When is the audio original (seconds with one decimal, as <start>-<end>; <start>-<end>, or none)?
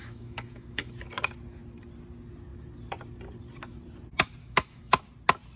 0.9-4.4; 5.0-5.6